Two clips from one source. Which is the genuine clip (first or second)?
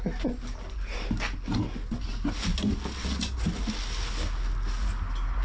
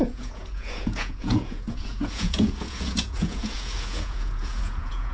first